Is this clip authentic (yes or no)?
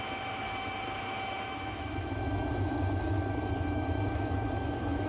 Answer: no